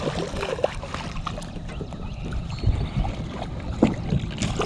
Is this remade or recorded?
recorded